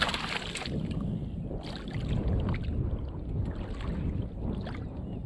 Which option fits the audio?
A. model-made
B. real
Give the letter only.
B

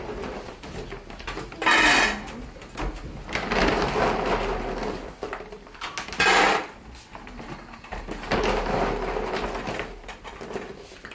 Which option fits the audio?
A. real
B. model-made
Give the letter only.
A